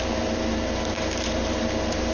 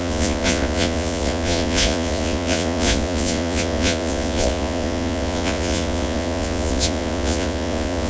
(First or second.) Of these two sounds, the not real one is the second